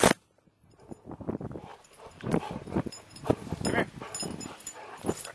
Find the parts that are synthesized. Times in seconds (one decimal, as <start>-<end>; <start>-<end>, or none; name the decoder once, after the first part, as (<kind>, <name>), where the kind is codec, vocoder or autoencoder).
0.0-3.3 (vocoder, BigVGAN v2); 4.6-5.3